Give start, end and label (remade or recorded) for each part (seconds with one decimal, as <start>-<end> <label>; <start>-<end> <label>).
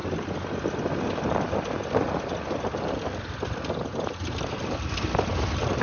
0.0-5.8 recorded